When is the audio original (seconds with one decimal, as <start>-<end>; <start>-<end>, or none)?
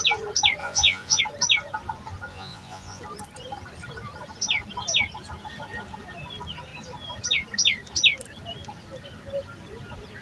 0.0-0.6; 1.2-2.3; 3.0-10.2